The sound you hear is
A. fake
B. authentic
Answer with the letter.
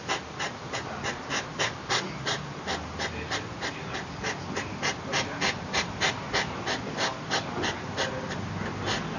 B